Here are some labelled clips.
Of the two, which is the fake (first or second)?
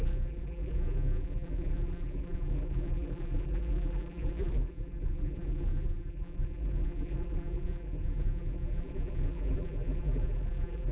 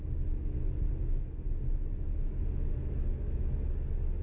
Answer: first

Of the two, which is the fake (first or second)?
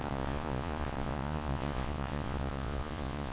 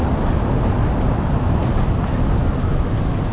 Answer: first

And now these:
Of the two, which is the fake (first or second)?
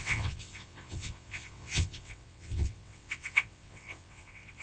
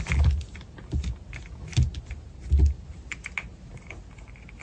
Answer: first